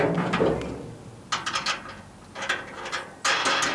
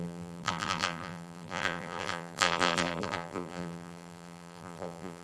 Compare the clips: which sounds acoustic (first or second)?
first